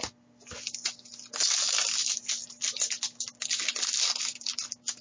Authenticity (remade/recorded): recorded